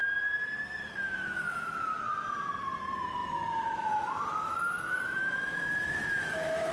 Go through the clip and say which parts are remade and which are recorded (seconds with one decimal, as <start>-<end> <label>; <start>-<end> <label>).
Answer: 0.0-0.6 recorded; 0.6-1.9 remade; 1.9-2.6 recorded; 2.6-6.7 remade